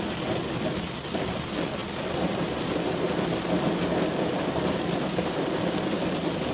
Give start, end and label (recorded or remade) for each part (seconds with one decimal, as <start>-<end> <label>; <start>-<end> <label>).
0.0-6.5 recorded